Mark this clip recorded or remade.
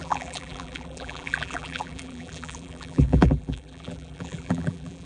remade